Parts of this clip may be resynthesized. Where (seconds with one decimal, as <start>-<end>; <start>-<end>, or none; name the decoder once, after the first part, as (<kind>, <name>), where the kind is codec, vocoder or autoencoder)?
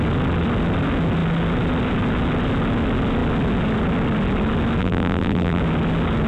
4.8-5.6 (vocoder, BigVGAN v2)